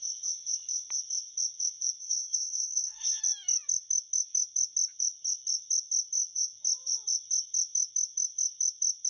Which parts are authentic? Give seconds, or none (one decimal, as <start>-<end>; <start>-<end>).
0.0-2.0; 3.2-9.1